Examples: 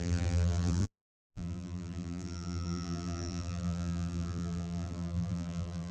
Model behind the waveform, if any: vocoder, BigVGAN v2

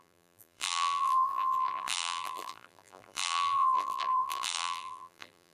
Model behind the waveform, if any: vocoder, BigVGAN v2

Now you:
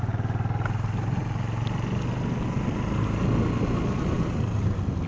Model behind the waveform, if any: none